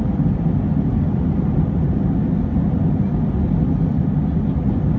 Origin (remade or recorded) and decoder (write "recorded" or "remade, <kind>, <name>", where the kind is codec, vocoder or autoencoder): recorded